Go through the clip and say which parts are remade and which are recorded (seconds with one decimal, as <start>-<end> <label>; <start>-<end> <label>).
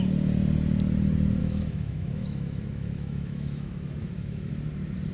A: 0.0-1.4 recorded; 1.4-4.5 remade; 4.5-5.1 recorded